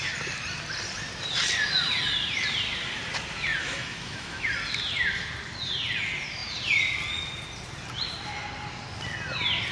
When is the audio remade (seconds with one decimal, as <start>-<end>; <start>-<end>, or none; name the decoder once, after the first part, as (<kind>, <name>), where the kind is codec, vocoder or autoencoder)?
3.6-4.5 (autoencoder, DAC-VAE)